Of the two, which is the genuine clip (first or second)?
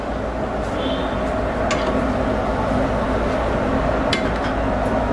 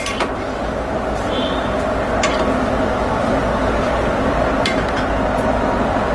first